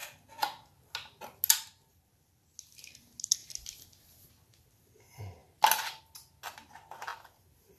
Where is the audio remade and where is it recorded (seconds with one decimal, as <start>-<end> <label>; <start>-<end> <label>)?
0.0-7.8 recorded